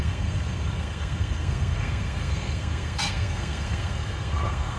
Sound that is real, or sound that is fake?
fake